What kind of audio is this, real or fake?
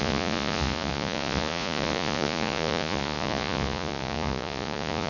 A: fake